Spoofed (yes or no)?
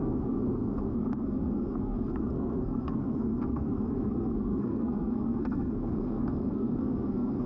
yes